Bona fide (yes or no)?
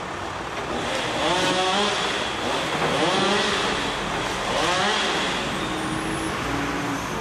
yes